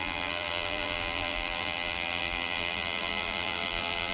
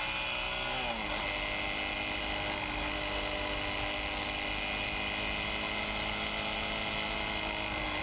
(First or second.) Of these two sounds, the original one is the second